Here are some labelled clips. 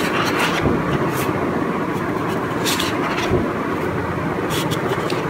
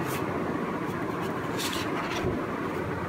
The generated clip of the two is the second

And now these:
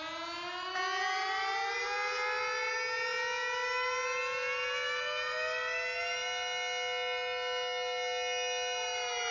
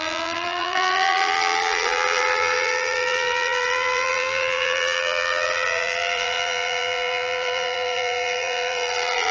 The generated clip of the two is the second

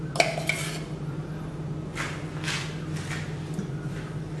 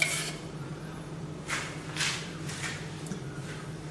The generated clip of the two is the second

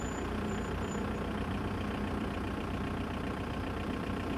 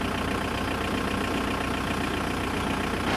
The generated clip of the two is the first